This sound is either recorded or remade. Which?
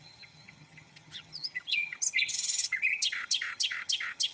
remade